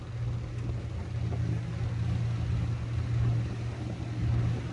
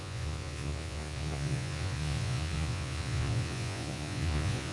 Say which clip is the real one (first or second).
first